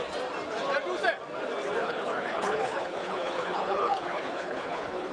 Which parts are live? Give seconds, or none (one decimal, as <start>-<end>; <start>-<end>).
0.0-1.8